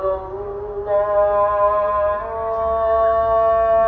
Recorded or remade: recorded